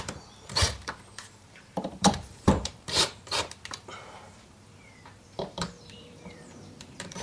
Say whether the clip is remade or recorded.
remade